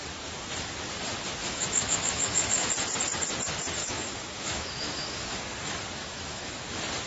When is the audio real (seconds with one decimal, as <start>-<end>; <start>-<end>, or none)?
0.0-1.4; 2.7-3.8; 5.4-6.0; 6.6-7.1